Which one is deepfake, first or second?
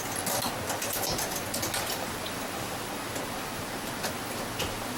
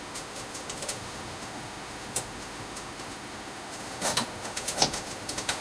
second